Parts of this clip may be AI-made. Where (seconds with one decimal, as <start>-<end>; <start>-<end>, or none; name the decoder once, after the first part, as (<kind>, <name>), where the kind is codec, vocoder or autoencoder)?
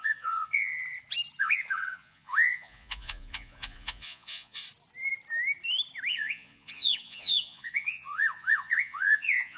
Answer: 0.0-0.7 (vocoder, Vocos); 1.4-4.6; 6.1-9.6